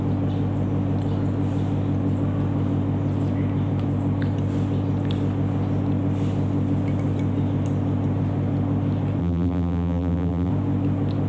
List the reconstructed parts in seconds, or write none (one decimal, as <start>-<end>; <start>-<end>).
9.2-10.5